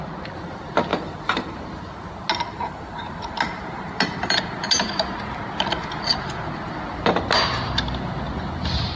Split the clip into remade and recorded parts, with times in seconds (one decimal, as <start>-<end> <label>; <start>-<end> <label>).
0.0-0.9 recorded; 0.9-1.6 remade; 1.6-2.5 recorded; 2.5-4.4 remade; 4.4-9.0 recorded